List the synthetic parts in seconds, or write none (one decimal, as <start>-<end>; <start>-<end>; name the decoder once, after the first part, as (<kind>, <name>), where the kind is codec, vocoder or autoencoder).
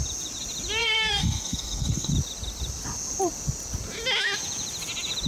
0.8-2.1 (codec, SNAC)